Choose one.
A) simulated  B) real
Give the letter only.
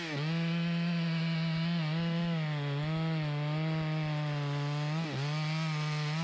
B